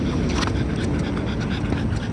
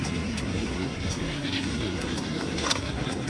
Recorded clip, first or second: first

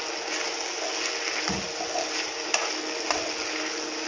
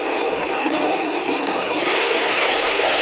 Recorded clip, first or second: first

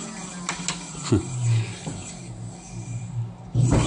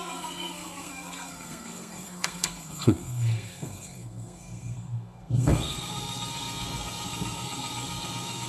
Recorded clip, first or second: first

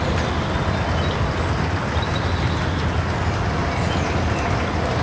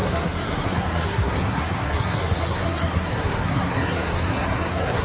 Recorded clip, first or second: first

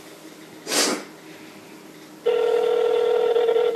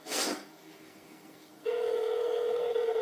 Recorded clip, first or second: first